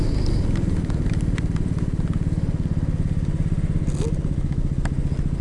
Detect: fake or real real